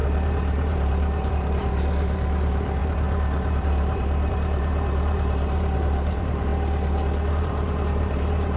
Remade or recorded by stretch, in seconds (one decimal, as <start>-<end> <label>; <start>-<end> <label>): 0.0-6.5 remade; 6.5-7.3 recorded; 7.3-8.6 remade